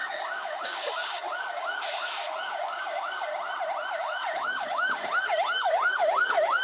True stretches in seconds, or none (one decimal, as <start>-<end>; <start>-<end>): 3.3-3.9